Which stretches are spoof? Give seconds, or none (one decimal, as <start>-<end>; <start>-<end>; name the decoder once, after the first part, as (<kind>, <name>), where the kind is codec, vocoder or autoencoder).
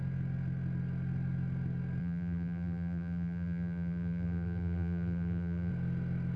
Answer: 2.0-5.7 (vocoder, BigVGAN v2)